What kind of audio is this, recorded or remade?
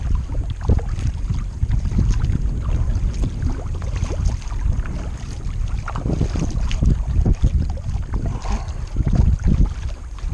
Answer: recorded